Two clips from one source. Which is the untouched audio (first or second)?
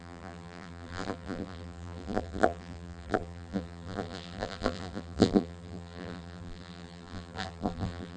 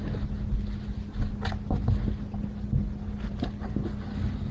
second